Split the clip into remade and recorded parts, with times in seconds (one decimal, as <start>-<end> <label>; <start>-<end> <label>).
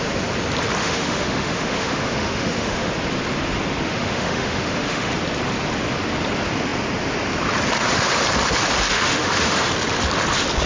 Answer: 0.0-0.8 recorded; 0.8-2.9 remade; 2.9-3.9 recorded; 3.9-5.1 remade; 5.1-8.9 recorded; 8.9-9.7 remade; 9.7-10.7 recorded